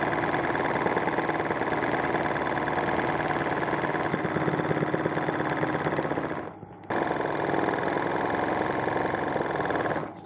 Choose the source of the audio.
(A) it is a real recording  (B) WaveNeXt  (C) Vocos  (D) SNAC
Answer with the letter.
A